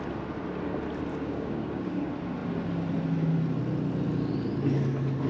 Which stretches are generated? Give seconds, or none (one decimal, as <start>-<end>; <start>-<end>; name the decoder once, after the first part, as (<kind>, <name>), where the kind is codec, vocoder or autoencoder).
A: 1.1-2.0 (codec, DAC)